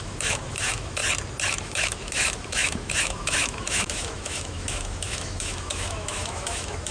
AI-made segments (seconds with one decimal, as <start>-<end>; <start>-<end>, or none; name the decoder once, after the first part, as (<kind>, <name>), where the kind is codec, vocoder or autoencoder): 0.0-1.0 (autoencoder, DAC-VAE); 1.6-6.9